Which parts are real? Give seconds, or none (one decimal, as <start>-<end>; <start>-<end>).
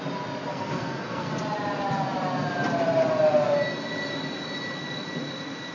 0.0-0.5; 1.3-5.7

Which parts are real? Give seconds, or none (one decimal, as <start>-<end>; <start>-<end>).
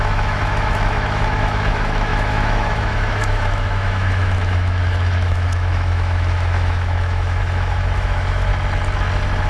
8.5-9.5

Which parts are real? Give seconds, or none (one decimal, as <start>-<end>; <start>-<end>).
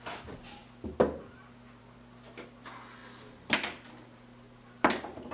0.0-5.3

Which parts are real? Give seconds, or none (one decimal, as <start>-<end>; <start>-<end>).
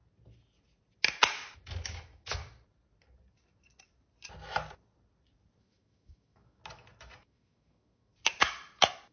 0.0-1.9; 2.4-5.6; 6.6-7.2; 8.1-9.1